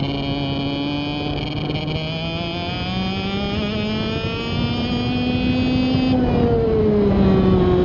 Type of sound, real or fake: real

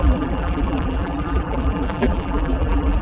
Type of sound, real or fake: fake